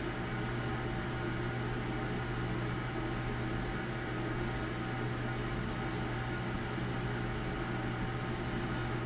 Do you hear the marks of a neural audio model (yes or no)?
no